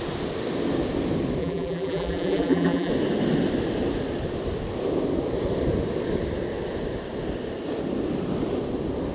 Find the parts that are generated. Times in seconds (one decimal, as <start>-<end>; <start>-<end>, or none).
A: 1.4-2.9